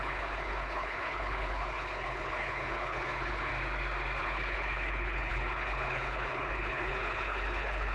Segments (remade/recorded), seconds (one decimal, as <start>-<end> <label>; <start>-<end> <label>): 0.0-3.5 remade; 3.5-4.2 recorded; 4.2-7.9 remade

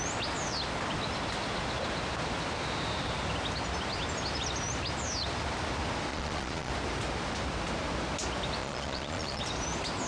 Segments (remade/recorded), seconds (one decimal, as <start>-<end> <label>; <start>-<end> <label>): 0.0-6.1 recorded; 6.1-6.7 remade; 6.7-8.6 recorded; 8.6-9.4 remade; 9.4-10.1 recorded

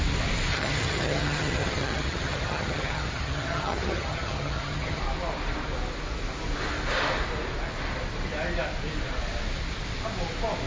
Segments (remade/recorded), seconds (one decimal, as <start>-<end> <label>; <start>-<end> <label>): 0.0-0.5 recorded; 0.5-5.0 remade; 5.0-10.7 recorded